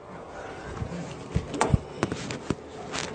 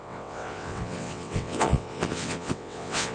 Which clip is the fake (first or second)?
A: second